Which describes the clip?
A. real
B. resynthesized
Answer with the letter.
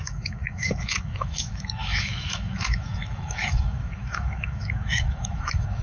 B